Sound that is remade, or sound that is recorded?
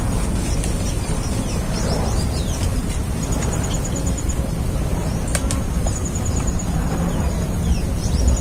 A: recorded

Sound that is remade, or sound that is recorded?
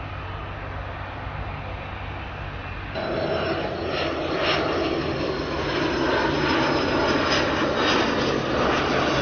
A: recorded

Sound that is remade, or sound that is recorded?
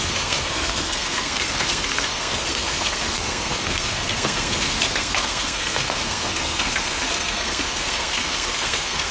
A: remade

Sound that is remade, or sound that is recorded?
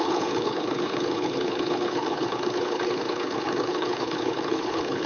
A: remade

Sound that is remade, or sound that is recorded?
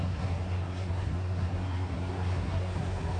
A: remade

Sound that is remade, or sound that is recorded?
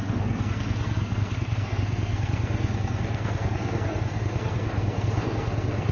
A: remade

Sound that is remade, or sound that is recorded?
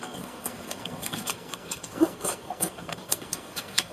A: remade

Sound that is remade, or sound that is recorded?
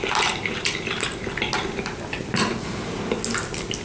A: recorded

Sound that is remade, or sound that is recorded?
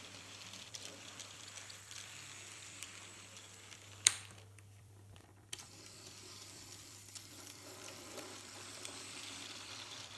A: remade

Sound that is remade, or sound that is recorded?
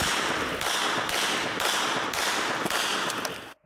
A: recorded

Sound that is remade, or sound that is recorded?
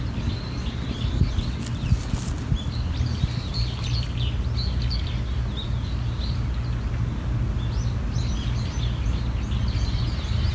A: recorded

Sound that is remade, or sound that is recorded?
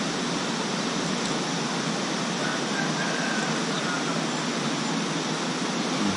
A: recorded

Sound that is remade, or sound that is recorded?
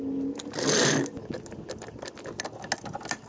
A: recorded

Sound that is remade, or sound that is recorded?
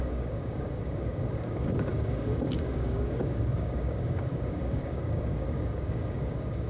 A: remade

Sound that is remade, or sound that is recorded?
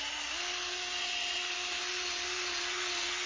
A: recorded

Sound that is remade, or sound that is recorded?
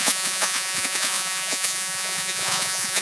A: remade